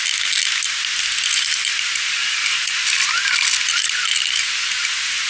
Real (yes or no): yes